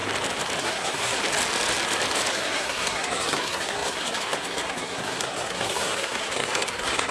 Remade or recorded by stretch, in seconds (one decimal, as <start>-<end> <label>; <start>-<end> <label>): 0.0-0.6 recorded; 0.6-1.2 remade; 1.2-2.3 recorded; 2.3-7.1 remade